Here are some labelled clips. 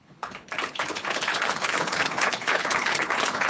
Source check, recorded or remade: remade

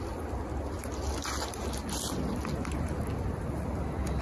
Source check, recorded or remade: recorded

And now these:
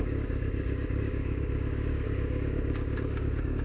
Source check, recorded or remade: remade